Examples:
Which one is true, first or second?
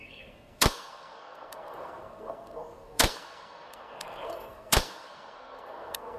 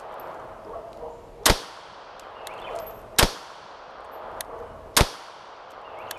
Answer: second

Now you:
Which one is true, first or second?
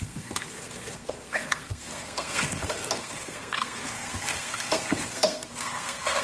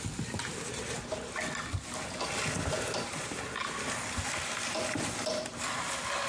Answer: second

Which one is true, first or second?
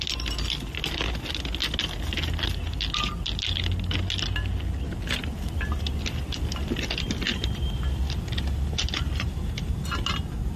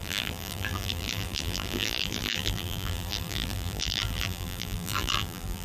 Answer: first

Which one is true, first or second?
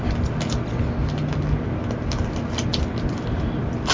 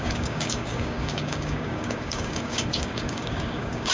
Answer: first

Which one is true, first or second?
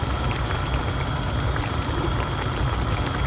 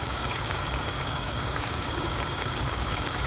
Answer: first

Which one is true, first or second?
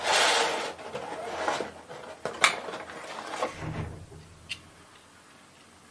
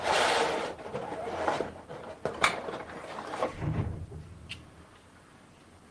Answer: first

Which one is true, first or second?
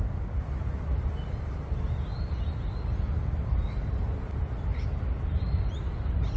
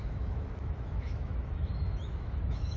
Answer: first